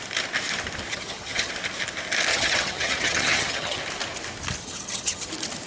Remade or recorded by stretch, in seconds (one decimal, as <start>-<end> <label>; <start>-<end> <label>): 0.0-0.9 recorded; 0.9-1.5 remade; 1.5-2.3 recorded; 2.3-3.8 remade; 3.8-4.6 recorded; 4.6-5.3 remade; 5.3-5.7 recorded